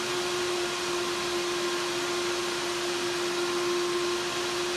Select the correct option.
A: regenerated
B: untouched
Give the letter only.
B